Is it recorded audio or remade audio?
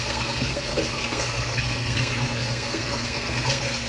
remade